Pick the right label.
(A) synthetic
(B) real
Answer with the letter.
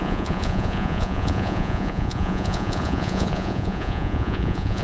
A